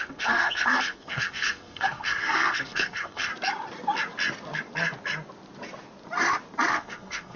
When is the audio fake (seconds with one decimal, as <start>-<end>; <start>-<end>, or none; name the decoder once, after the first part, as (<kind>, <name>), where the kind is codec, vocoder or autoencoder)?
0.0-3.3 (codec, SNAC); 6.7-7.4